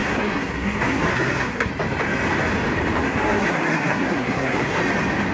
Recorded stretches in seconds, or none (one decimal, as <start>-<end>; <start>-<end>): 1.7-3.0; 4.8-5.3

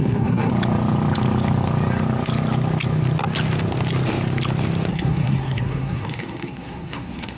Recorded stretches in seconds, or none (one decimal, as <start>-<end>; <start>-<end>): 0.5-4.9